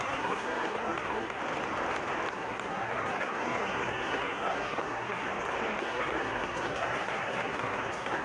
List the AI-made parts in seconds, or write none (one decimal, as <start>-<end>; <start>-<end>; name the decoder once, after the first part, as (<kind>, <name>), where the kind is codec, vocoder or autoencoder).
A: 0.0-1.4 (codec, SNAC); 2.3-5.3; 5.8-8.2